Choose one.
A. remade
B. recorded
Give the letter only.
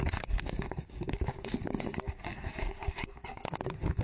A